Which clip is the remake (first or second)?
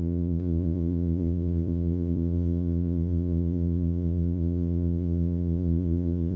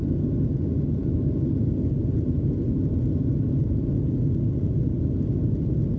first